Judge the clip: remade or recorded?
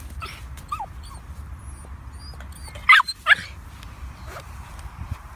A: recorded